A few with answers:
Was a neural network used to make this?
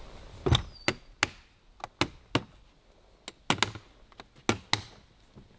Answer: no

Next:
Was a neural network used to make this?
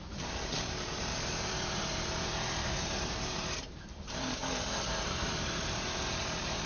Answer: yes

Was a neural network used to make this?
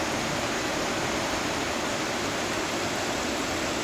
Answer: no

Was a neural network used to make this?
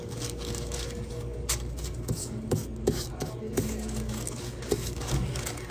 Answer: yes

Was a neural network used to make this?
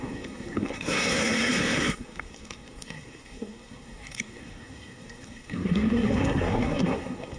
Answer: yes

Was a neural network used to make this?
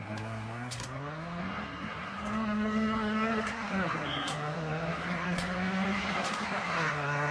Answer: yes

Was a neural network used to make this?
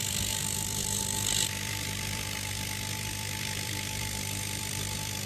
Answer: yes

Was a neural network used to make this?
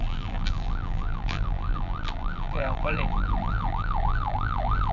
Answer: yes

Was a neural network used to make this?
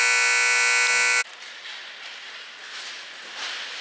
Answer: no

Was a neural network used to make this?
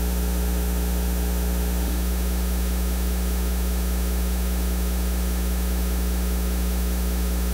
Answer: yes